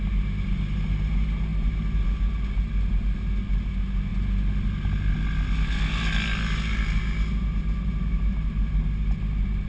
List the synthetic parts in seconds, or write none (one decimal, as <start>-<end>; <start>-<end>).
none